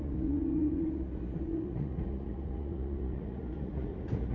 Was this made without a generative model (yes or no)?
no